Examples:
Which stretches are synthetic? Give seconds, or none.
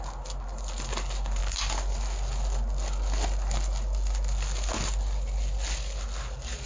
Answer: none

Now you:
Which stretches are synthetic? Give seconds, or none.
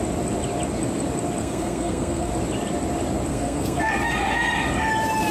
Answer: 1.4-2.3 (codec, SNAC); 3.3-3.9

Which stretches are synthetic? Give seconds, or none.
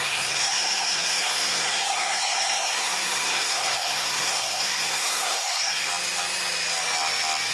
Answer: 0.0-5.9 (codec, SNAC)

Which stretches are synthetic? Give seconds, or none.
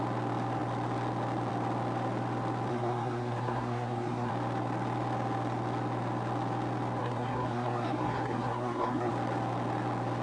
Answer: 2.7-4.3 (codec, SNAC); 7.0-9.1